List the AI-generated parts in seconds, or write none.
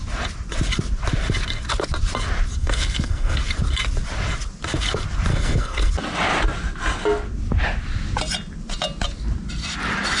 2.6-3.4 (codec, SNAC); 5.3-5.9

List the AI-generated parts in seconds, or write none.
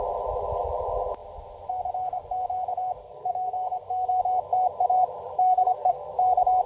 3.0-4.2 (codec, SNAC); 5.3-6.1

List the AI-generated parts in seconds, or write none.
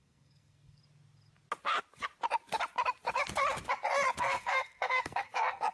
0.0-0.8 (codec, SNAC); 4.2-5.7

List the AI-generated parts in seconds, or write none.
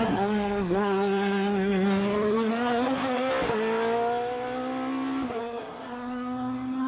0.0-3.3 (codec, SNAC); 5.4-6.9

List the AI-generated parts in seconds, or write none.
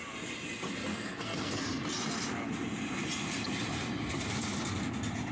0.9-1.5 (codec, SNAC)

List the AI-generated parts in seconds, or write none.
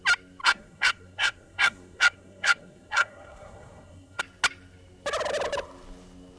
0.4-4.2 (codec, SNAC)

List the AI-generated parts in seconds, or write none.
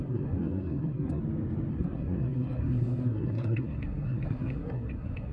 0.0-1.2 (codec, SNAC); 1.7-5.3